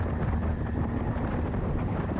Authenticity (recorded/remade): remade